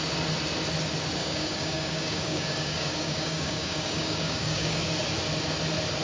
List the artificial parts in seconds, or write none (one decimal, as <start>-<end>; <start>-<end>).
1.2-4.8